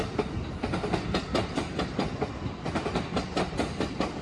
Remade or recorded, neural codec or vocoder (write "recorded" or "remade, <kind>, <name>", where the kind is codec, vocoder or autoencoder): recorded